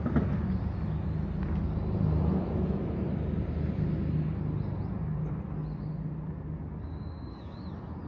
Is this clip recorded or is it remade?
recorded